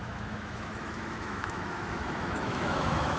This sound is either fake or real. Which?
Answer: fake